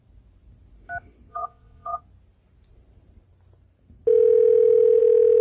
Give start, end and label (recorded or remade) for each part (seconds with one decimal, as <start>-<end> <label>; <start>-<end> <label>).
0.0-1.3 recorded; 1.3-2.0 remade; 2.0-5.4 recorded